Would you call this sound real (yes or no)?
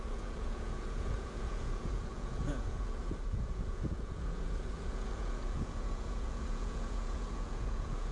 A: no